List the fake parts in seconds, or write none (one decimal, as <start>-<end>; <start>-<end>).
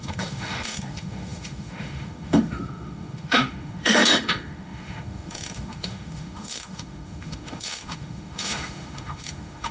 0.0-9.7